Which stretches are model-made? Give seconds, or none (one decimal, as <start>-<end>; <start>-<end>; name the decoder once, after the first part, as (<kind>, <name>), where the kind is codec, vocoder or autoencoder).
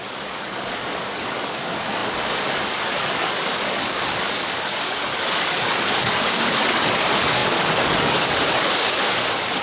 0.0-9.6 (codec, DAC)